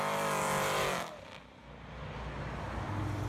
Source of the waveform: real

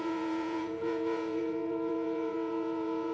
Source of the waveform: fake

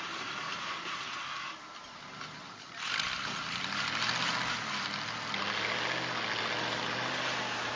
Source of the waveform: real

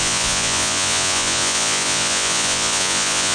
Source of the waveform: fake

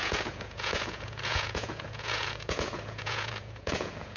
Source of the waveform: fake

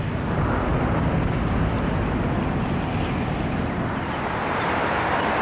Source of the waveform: real